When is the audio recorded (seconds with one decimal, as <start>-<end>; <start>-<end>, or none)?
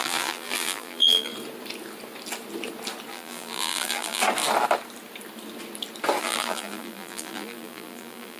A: 1.3-3.1; 4.2-6.2